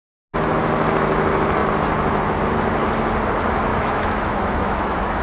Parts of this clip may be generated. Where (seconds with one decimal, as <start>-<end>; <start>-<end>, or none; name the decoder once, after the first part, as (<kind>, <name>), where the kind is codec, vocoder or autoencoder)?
3.7-5.2 (autoencoder, DAC-VAE)